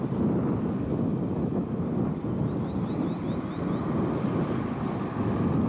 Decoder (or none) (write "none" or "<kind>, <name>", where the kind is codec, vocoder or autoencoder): none